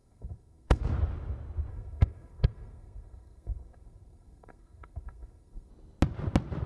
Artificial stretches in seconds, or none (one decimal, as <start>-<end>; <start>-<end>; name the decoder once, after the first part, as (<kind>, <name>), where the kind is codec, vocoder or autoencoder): 0.0-0.8 (codec, SNAC); 1.7-5.7